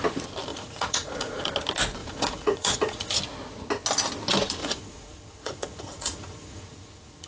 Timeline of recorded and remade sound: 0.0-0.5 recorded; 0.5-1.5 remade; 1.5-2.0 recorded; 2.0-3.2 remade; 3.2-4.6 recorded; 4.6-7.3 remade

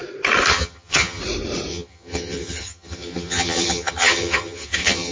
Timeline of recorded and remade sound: 0.0-0.5 recorded; 0.5-1.2 remade; 1.2-1.7 recorded; 1.7-5.1 remade

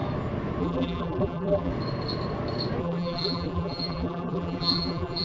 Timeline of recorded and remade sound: 0.0-0.6 recorded; 0.6-1.7 remade; 1.7-2.8 recorded; 2.8-5.2 remade

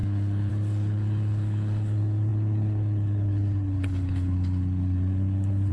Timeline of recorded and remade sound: 0.0-5.7 remade

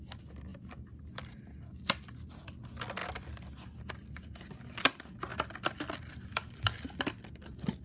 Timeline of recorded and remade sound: 0.0-7.8 recorded

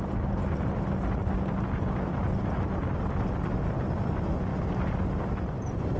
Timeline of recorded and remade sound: 0.0-6.0 recorded

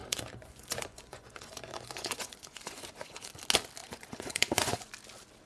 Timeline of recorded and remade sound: 0.0-3.3 remade; 3.3-3.8 recorded; 3.8-4.9 remade; 4.9-5.5 recorded

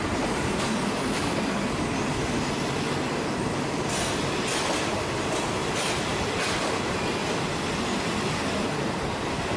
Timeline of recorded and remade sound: 0.0-5.6 recorded; 5.6-9.0 remade; 9.0-9.6 recorded